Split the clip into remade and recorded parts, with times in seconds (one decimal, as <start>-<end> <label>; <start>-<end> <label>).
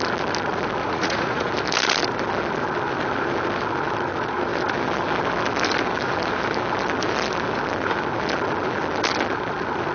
0.0-0.8 recorded; 0.8-1.5 remade; 1.5-9.9 recorded